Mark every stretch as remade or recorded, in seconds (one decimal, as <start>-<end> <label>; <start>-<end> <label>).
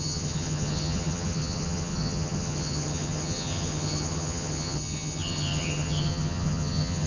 0.0-7.1 remade